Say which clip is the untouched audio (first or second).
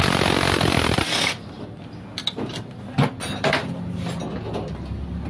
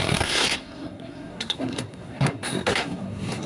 first